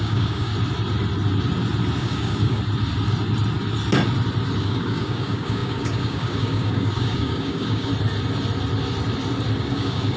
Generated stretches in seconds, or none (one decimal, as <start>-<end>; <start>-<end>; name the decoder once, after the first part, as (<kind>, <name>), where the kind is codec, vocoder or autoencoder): 0.0-0.5 (codec, DAC); 2.0-2.6; 4.6-7.9; 9.6-10.2